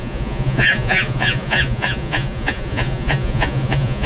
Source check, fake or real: fake